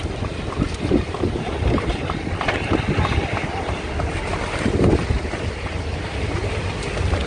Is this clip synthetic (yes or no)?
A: no